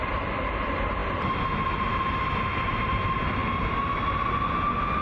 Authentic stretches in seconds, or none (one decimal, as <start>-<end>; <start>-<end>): 0.0-5.0